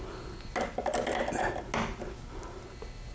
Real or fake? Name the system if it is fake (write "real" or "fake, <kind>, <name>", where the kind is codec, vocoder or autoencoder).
real